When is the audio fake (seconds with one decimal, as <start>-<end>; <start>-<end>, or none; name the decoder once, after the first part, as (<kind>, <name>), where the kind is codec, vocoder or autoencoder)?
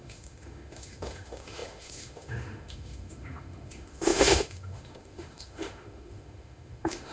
0.0-7.1 (autoencoder, DAC-VAE)